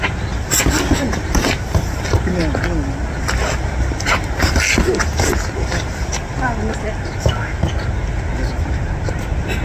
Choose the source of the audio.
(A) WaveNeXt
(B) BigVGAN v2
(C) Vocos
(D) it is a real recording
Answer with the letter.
D